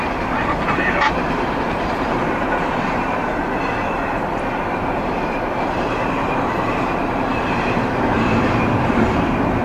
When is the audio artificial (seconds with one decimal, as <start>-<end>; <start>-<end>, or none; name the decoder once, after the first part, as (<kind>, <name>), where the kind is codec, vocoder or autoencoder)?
0.0-9.6 (vocoder, BigVGAN v2)